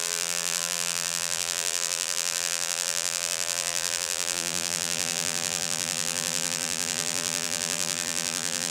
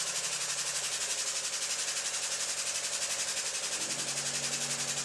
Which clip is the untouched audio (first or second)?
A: second